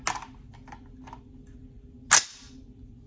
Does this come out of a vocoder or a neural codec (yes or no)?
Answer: no